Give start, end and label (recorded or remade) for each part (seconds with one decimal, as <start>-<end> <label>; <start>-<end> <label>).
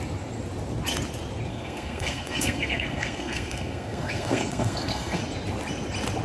0.0-1.5 recorded; 1.5-5.2 remade; 5.2-6.2 recorded